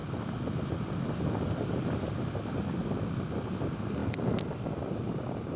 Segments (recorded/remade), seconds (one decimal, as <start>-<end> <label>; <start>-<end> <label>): 0.0-5.6 recorded